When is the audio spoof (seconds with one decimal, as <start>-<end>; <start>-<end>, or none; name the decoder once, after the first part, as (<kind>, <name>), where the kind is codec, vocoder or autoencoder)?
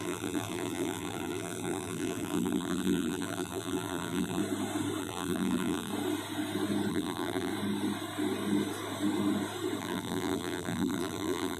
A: 0.0-4.4 (vocoder, BigVGAN v2); 5.0-5.9; 6.9-7.5; 9.8-11.6